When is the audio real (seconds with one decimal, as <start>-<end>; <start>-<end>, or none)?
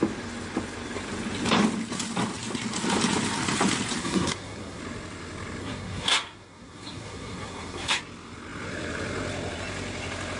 0.0-4.0; 4.8-5.6; 8.0-10.4